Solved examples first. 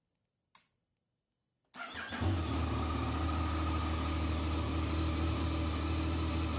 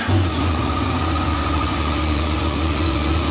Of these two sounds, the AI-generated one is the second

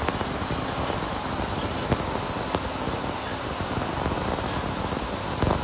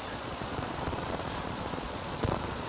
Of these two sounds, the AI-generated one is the second